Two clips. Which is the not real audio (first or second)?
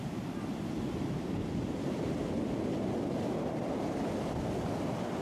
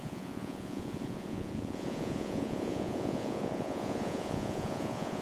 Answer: second